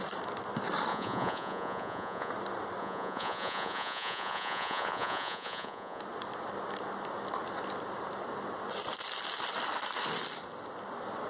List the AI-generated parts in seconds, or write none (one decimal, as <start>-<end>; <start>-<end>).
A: 0.9-2.3; 2.8-6.0